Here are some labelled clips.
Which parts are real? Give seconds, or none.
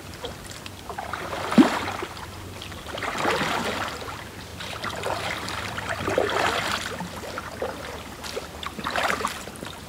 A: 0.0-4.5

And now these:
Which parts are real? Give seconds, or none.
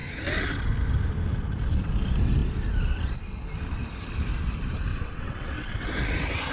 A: 0.0-4.9; 5.9-6.5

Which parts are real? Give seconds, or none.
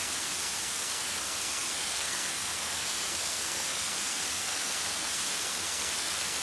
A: none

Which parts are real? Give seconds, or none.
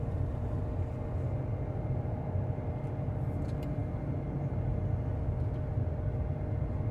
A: 0.0-6.9